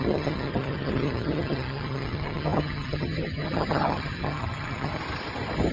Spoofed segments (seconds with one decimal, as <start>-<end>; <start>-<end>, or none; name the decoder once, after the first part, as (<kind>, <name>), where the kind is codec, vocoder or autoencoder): 0.0-5.0 (vocoder, HiFi-GAN)